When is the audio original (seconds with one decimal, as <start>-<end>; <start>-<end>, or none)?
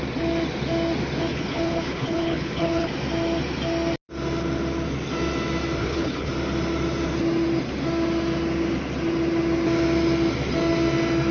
0.0-1.3; 2.9-5.8; 6.3-11.3